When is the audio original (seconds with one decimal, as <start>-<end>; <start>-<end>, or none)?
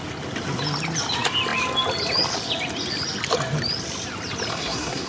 0.0-4.5